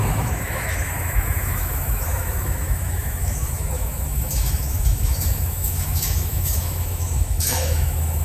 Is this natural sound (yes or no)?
no